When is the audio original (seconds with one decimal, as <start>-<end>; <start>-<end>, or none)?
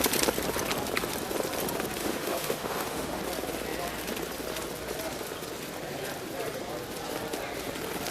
0.0-2.0; 3.2-8.1